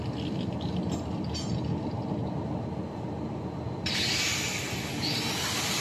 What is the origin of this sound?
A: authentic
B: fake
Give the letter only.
A